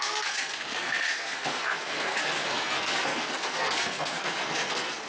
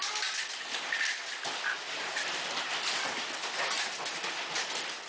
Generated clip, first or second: first